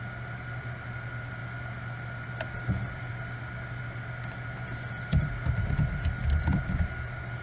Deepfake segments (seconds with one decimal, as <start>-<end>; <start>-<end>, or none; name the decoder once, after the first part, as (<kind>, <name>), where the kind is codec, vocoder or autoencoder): none